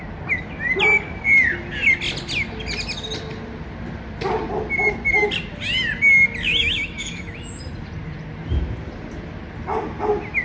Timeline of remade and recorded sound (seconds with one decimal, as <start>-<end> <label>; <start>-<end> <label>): 0.0-6.6 recorded; 6.6-7.6 remade; 7.6-10.4 recorded